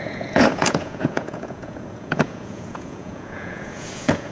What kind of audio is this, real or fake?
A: fake